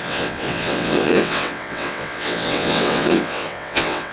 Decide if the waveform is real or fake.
fake